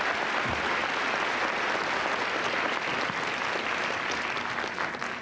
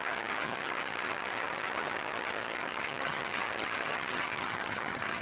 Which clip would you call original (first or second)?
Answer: first